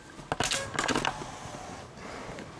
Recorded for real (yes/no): yes